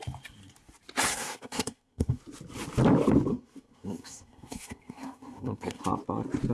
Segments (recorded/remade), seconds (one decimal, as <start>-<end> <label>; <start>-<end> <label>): 0.0-1.1 recorded; 1.1-2.2 remade; 2.2-3.3 recorded; 3.3-5.8 remade; 5.8-6.5 recorded